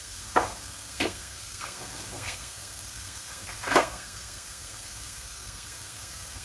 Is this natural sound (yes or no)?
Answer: no